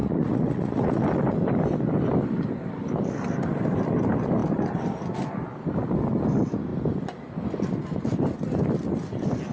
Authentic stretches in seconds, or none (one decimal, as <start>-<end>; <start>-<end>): 1.0-9.5